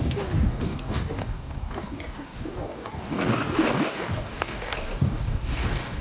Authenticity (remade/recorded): remade